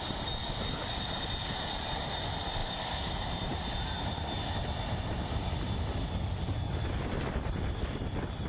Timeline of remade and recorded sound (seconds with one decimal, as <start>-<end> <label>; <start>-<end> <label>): 0.0-2.6 recorded; 2.6-7.7 remade; 7.7-8.5 recorded